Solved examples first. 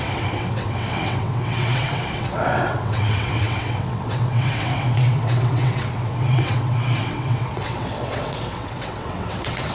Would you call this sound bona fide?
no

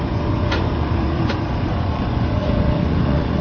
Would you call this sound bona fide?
no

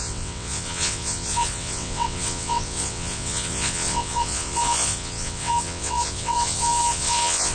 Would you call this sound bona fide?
no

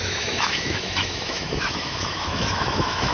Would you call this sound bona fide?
no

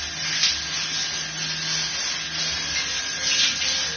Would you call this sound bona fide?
yes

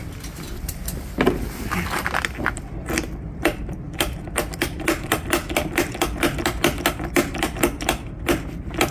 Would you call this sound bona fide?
yes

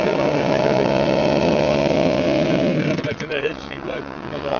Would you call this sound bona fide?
no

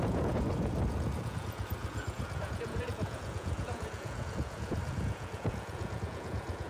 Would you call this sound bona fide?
no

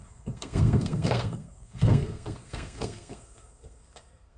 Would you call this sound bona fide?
no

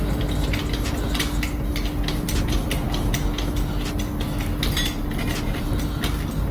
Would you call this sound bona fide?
yes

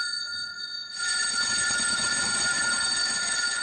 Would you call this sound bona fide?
no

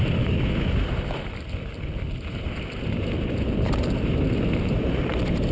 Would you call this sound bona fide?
yes